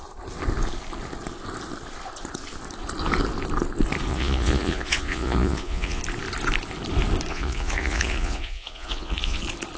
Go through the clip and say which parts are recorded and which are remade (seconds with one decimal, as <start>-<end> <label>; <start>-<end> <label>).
0.0-4.1 recorded; 4.1-6.0 remade; 6.0-7.3 recorded; 7.3-9.4 remade; 9.4-9.8 recorded